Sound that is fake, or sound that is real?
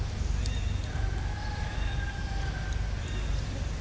real